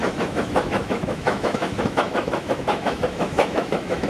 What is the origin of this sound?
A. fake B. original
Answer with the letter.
A